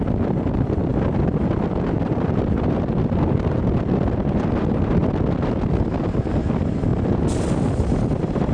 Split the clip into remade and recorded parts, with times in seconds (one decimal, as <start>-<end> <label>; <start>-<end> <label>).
0.0-0.9 remade; 0.9-1.9 recorded; 1.9-5.0 remade; 5.0-6.3 recorded; 6.3-6.9 remade; 6.9-8.5 recorded